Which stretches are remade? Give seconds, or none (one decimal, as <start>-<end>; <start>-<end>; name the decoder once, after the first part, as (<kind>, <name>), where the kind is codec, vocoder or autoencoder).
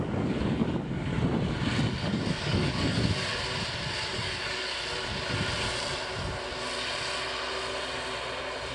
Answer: 0.0-1.1 (codec, DAC); 1.9-3.3; 4.1-4.7